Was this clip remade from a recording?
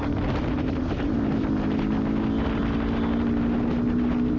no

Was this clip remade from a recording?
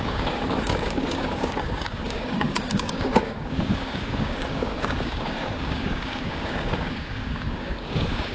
yes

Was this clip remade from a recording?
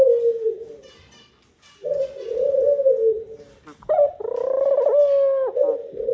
no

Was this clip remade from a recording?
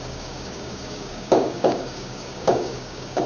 yes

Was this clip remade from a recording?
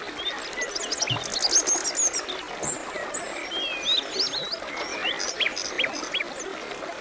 no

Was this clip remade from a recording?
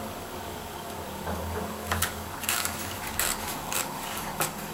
yes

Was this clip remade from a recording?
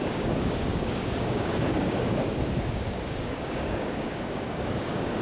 yes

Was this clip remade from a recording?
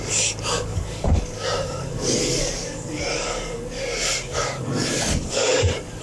yes